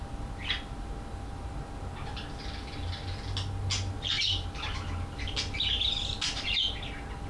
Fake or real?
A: real